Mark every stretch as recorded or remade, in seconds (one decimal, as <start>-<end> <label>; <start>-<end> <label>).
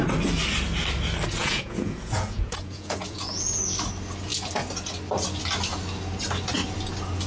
0.0-1.4 recorded; 1.4-3.6 remade; 3.6-7.3 recorded